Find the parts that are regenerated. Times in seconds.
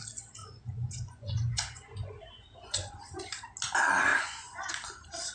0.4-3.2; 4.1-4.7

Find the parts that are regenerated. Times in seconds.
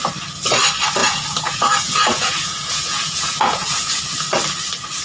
1.0-4.0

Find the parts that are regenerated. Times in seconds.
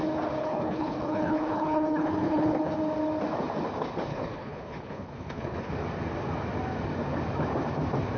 0.4-2.8; 4.1-5.7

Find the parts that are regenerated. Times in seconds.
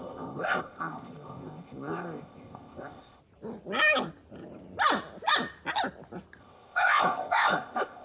0.0-3.2; 6.4-8.0